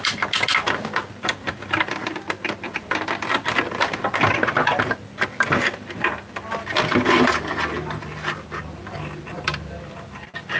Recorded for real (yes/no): yes